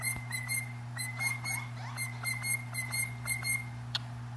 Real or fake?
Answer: fake